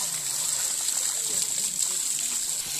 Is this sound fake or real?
real